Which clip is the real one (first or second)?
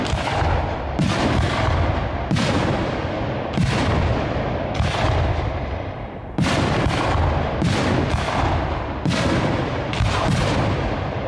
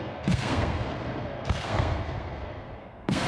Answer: first